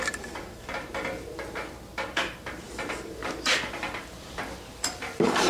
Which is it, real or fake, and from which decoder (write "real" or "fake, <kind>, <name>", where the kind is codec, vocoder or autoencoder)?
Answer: fake, vocoder, BigVGAN v2